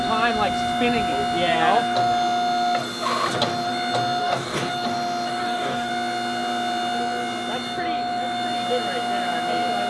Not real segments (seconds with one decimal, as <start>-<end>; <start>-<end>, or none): 4.2-4.7; 5.4-5.9